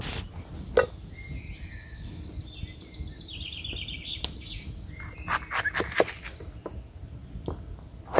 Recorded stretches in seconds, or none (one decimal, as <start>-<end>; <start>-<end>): 0.0-8.2